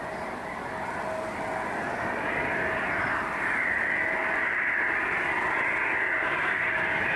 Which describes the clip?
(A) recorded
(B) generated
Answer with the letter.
A